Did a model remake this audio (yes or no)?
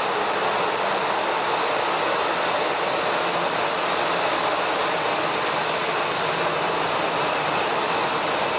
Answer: no